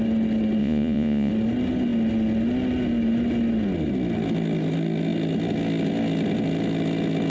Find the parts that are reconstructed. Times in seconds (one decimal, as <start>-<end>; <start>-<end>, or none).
0.6-1.3